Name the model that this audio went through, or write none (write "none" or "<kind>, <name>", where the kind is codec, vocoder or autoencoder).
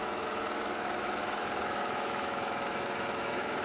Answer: autoencoder, DAC-VAE